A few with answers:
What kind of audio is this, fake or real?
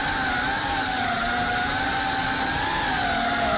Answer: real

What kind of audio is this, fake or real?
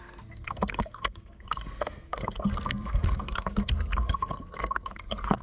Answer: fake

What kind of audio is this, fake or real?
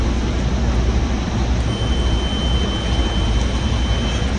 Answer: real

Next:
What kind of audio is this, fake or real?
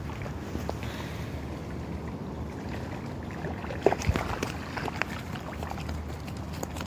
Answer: real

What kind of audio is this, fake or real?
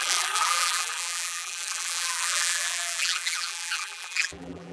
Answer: fake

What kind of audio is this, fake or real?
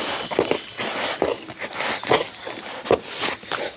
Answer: real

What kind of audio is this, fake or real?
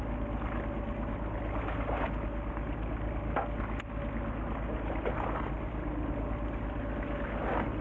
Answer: real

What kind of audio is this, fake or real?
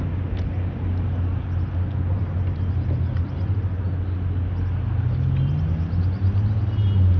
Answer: real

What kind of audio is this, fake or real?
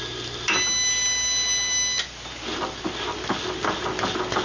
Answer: real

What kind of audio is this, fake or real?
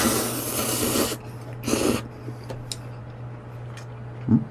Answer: real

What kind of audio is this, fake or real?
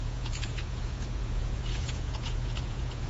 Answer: fake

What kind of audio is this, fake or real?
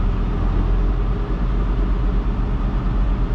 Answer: real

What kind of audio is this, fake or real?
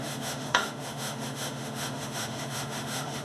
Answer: fake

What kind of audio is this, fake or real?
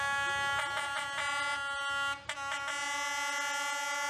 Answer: real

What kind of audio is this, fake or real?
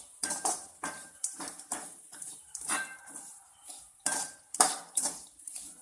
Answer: fake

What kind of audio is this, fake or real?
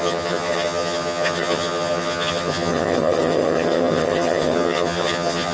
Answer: fake